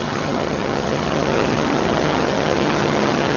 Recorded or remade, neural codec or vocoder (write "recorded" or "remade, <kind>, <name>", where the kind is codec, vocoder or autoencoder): remade, vocoder, HiFi-GAN